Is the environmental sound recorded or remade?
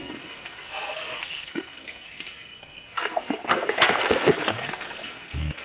remade